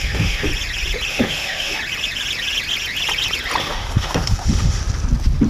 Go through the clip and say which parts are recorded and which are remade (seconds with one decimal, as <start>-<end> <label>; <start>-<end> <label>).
0.0-0.5 remade; 0.5-1.1 recorded; 1.1-1.8 remade; 1.8-3.6 recorded; 3.6-4.8 remade; 4.8-5.5 recorded